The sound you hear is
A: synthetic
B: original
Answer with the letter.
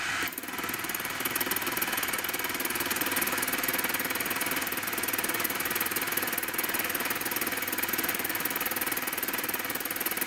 B